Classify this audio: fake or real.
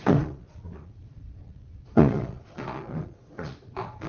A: fake